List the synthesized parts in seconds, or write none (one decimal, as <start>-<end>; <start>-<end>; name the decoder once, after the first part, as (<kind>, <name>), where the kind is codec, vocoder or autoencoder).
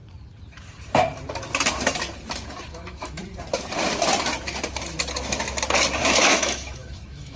2.7-3.2 (autoencoder, DAC-VAE); 6.0-7.4